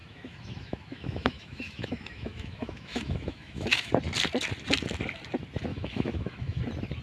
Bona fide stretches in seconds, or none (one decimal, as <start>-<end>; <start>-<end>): 3.9-5.7; 6.6-7.0